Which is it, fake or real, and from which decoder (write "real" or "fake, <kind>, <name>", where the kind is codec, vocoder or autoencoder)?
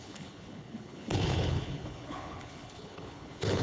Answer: fake, codec, HILCodec